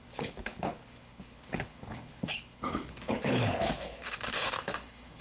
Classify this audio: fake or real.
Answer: fake